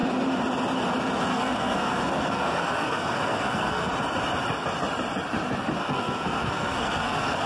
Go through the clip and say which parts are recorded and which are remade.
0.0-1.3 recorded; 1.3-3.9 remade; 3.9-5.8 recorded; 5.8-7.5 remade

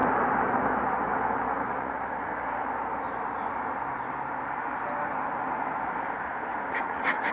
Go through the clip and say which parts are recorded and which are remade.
0.0-1.7 recorded; 1.7-2.3 remade; 2.3-6.7 recorded; 6.7-7.3 remade

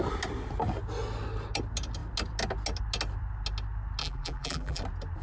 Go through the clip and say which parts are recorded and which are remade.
0.0-4.0 recorded; 4.0-4.8 remade; 4.8-5.2 recorded

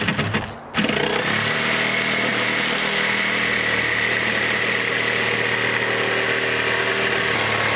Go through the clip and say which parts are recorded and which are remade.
0.0-7.8 recorded